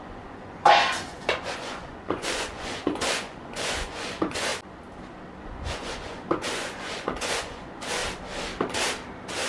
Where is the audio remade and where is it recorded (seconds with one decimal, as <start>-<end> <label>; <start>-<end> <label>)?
0.0-4.5 remade; 4.5-5.4 recorded; 5.4-8.0 remade; 8.0-9.5 recorded